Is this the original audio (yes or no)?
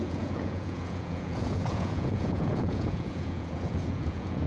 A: no